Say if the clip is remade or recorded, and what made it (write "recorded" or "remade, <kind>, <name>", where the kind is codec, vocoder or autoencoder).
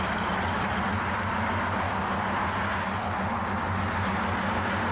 recorded